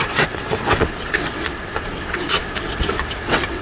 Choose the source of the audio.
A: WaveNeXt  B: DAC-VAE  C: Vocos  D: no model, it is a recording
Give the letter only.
A